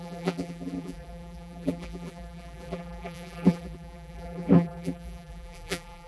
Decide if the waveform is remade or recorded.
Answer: remade